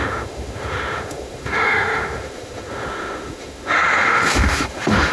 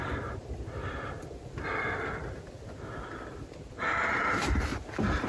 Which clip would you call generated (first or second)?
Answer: first